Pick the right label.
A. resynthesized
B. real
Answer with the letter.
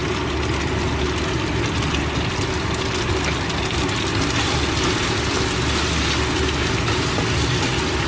B